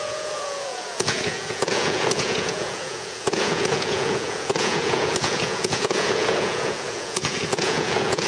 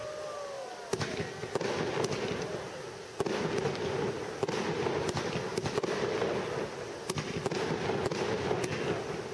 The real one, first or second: second